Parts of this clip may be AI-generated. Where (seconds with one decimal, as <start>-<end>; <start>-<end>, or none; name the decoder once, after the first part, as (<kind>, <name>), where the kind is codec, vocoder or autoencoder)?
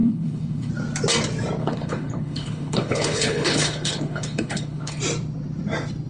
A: 0.0-0.7 (codec, HILCodec); 1.6-5.0